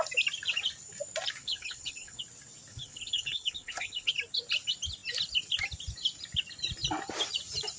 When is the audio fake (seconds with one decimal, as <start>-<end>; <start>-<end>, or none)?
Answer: 1.4-2.2; 2.7-4.1